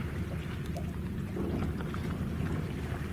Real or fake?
real